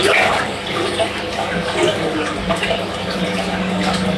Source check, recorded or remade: remade